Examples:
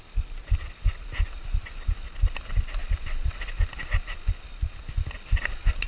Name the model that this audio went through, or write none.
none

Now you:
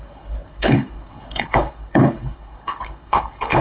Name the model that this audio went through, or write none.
codec, HILCodec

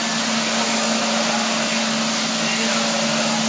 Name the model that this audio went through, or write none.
none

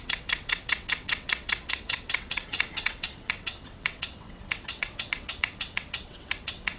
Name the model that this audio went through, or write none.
vocoder, WaveNeXt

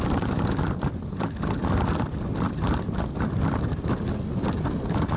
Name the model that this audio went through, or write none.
none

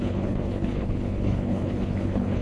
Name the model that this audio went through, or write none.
codec, HILCodec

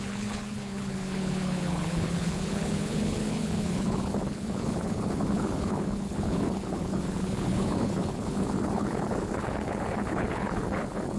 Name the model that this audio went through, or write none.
codec, HILCodec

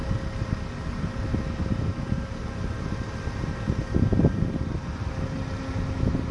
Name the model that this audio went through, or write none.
none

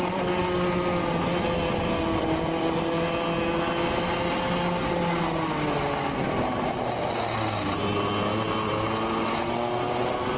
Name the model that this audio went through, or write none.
none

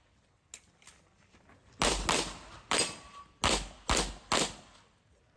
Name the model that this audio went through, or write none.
none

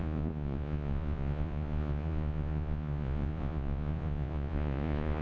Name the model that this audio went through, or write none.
vocoder, Vocos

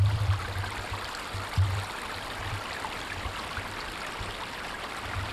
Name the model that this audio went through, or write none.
none